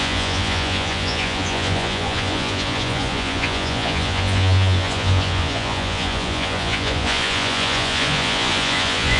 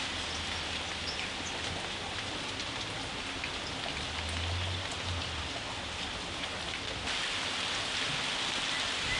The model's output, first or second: first